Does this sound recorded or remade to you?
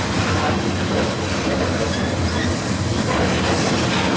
recorded